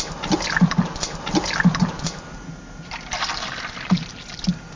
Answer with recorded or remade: recorded